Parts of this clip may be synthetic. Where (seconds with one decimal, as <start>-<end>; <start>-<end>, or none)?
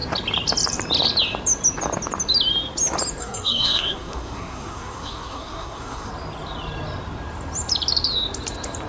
3.2-6.1